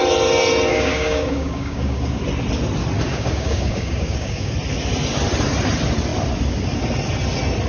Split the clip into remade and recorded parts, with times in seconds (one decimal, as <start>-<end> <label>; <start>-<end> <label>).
0.0-0.7 recorded; 0.7-2.2 remade; 2.2-3.1 recorded; 3.1-4.5 remade; 4.5-7.7 recorded

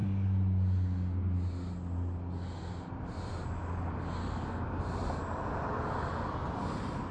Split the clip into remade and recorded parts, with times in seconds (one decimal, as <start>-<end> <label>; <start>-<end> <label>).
0.0-4.2 recorded; 4.2-4.8 remade; 4.8-7.1 recorded

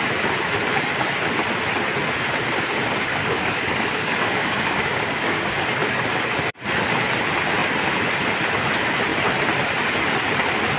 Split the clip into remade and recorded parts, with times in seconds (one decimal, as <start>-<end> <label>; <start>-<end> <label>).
0.0-3.1 recorded; 3.1-6.3 remade; 6.3-10.8 recorded

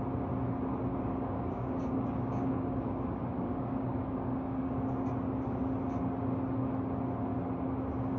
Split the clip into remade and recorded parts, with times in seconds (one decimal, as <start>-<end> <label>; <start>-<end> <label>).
0.0-0.9 recorded; 0.9-4.7 remade; 4.7-8.2 recorded

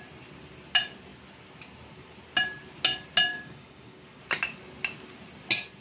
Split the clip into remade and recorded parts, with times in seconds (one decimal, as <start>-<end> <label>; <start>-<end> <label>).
0.0-3.3 recorded; 3.3-4.2 remade; 4.2-5.8 recorded

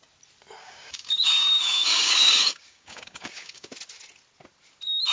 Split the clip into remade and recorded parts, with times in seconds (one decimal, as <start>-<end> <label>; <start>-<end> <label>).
0.0-0.6 recorded; 0.6-3.7 remade; 3.7-5.1 recorded